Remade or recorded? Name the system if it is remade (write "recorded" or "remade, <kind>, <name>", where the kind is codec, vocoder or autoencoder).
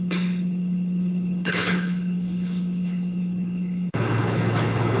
remade, codec, HILCodec